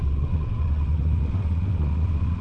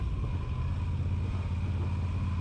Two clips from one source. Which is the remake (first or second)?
first